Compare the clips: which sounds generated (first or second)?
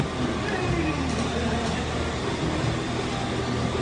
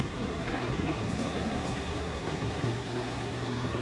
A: second